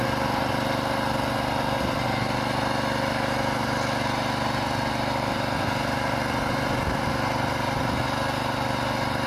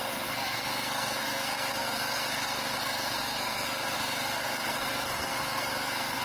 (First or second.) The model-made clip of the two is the second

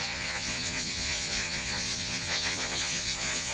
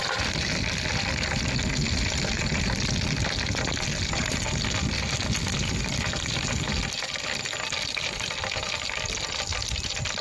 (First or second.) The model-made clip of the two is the first